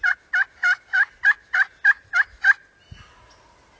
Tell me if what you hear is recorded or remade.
recorded